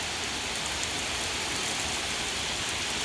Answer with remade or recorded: recorded